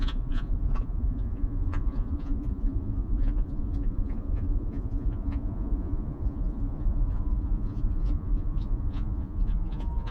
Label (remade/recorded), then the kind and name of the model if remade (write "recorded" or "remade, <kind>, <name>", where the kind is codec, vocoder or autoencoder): remade, vocoder, Vocos